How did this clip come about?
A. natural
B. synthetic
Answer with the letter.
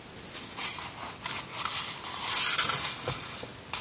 A